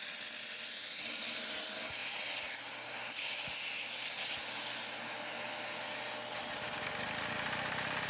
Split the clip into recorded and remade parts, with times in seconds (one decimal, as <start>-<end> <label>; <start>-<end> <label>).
0.0-8.1 recorded